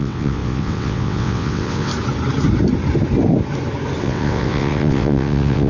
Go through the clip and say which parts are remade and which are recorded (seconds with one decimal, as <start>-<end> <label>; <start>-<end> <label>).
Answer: 0.0-1.9 remade; 1.9-4.0 recorded; 4.0-5.7 remade